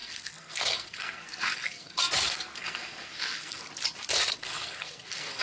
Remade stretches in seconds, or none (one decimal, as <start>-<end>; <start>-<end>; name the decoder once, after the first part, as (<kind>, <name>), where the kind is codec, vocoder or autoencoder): 0.0-3.6 (codec, SNAC); 4.4-5.4